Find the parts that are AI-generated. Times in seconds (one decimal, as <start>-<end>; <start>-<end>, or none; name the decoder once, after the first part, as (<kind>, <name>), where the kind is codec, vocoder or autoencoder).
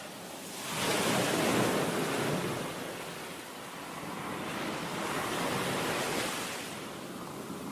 none